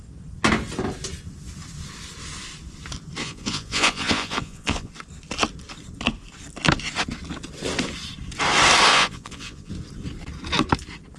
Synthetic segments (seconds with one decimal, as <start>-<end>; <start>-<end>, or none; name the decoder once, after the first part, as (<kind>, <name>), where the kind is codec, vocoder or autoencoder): 3.2-4.9 (vocoder, Vocos); 8.9-9.7